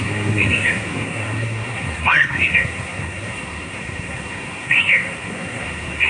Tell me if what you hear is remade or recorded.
remade